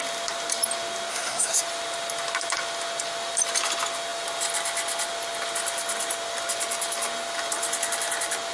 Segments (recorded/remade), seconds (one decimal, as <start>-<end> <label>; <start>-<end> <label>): 0.0-1.1 recorded; 1.1-1.6 remade; 1.6-8.5 recorded